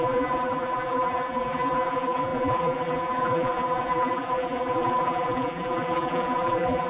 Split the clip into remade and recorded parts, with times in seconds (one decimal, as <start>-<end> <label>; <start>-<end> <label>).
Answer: 0.0-6.9 remade